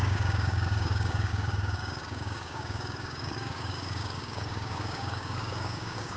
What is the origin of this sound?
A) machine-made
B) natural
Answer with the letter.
A